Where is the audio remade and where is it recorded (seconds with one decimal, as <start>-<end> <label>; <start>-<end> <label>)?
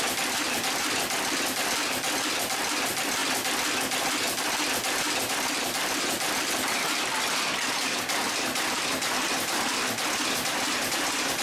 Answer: 0.0-3.2 remade; 3.2-5.3 recorded; 5.3-11.4 remade